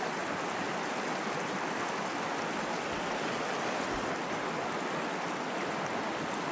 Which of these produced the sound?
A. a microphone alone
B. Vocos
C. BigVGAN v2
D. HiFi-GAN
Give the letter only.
A